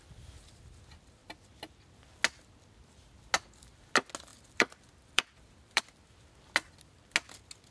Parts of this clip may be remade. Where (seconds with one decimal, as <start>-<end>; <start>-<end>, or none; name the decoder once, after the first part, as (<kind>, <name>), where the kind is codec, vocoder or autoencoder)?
4.3-5.8 (vocoder, BigVGAN v2)